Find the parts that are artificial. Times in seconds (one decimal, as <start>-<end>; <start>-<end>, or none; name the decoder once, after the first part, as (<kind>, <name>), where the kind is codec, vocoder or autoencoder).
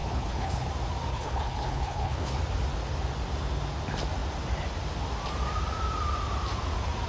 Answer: 0.0-0.7 (codec, HILCodec); 1.1-2.4